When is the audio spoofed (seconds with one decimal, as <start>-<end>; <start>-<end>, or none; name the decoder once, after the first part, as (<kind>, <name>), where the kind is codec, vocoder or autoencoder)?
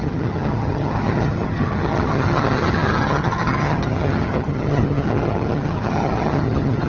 0.0-6.9 (vocoder, HiFi-GAN)